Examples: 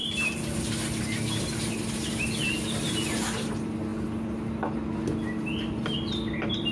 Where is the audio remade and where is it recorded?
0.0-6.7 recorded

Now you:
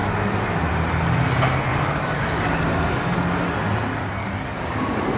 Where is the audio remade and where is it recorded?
0.0-1.7 recorded; 1.7-2.6 remade; 2.6-4.2 recorded; 4.2-4.7 remade; 4.7-5.2 recorded

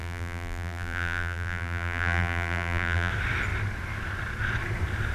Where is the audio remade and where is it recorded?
0.0-3.1 remade; 3.1-5.1 recorded

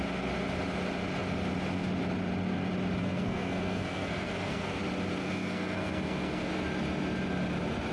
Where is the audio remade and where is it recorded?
0.0-3.0 recorded; 3.0-4.8 remade; 4.8-5.2 recorded; 5.2-6.5 remade; 6.5-7.9 recorded

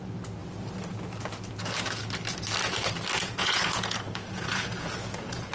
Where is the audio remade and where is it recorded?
0.0-3.2 recorded; 3.2-5.5 remade

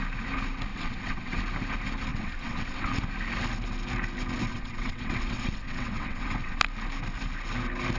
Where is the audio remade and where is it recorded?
0.0-0.7 recorded; 0.7-1.4 remade; 1.4-2.1 recorded; 2.1-3.0 remade; 3.0-4.5 recorded; 4.5-6.6 remade; 6.6-8.0 recorded

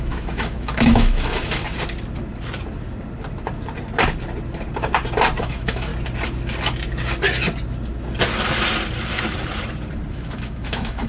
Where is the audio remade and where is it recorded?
0.0-1.6 remade; 1.6-5.4 recorded; 5.4-5.9 remade; 5.9-10.1 recorded; 10.1-11.1 remade